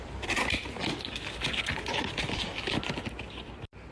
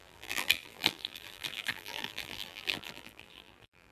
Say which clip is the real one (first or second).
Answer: first